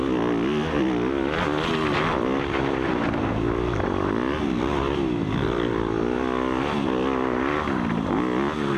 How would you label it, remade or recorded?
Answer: recorded